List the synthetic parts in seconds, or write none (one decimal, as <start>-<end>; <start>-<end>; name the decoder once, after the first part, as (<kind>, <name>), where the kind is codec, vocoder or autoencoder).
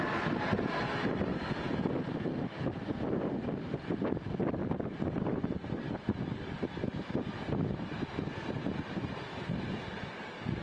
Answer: 1.3-2.0 (vocoder, BigVGAN v2)